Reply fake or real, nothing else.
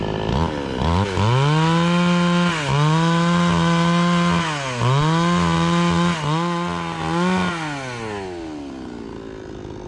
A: real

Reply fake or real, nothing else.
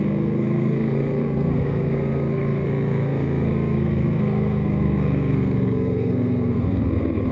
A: fake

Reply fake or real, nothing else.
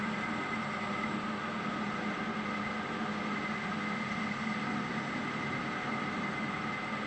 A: real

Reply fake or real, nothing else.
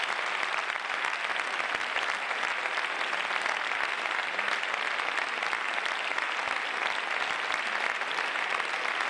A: real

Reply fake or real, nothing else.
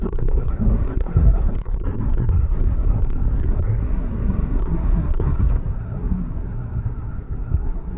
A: fake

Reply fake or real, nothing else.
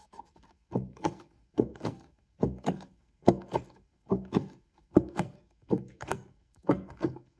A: fake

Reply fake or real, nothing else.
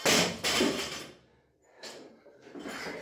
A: real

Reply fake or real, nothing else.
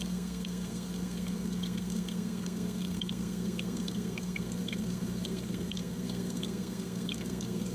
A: fake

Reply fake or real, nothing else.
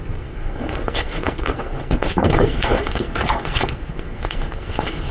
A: fake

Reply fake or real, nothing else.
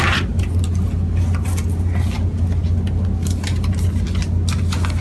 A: real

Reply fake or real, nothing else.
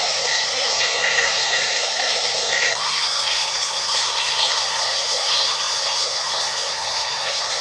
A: fake